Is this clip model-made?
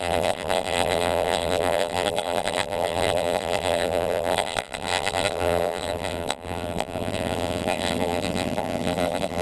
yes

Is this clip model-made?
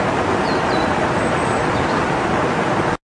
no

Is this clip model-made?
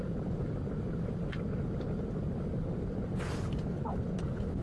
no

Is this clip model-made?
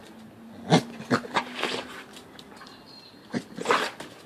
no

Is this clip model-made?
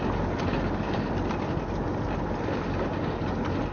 no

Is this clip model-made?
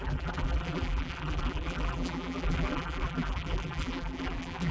yes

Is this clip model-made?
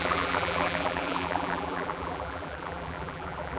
yes